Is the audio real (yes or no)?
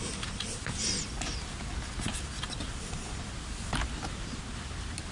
yes